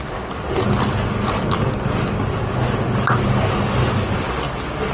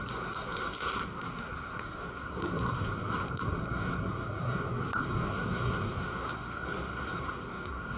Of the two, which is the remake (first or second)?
second